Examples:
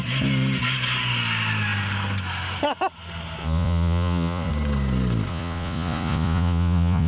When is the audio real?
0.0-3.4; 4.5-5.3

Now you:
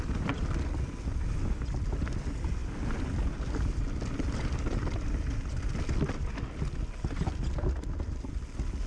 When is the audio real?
0.0-8.9